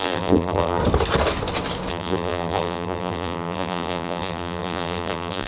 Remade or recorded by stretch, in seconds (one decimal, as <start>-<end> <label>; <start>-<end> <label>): 0.0-0.8 remade; 0.8-1.9 recorded; 1.9-5.5 remade